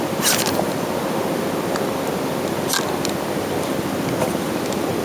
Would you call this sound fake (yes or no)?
no